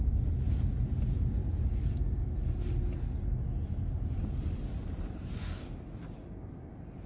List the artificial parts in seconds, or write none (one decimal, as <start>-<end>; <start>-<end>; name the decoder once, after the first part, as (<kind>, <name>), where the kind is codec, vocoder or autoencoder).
none